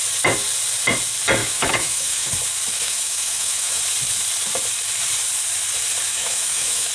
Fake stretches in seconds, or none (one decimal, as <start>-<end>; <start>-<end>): 1.4-2.3; 2.7-3.8; 6.1-6.9